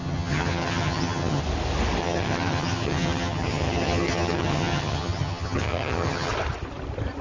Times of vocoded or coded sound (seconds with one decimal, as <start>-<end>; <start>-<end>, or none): 0.0-1.4; 2.0-6.3